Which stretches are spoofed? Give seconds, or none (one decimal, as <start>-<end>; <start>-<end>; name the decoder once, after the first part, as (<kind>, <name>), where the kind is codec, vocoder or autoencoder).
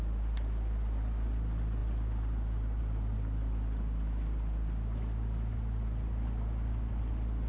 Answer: none